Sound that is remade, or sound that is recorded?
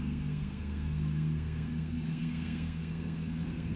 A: remade